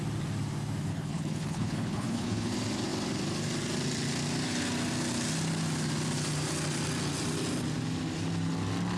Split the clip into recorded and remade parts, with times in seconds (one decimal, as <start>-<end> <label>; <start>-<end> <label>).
0.0-0.9 recorded; 0.9-2.5 remade; 2.5-9.0 recorded